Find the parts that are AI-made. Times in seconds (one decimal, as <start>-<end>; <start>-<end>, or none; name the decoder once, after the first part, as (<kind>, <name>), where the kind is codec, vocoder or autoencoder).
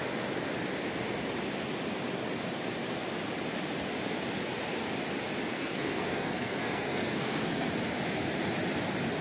5.5-7.7 (codec, SNAC)